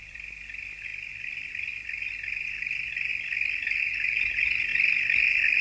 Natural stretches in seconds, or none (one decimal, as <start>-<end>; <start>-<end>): 3.1-3.8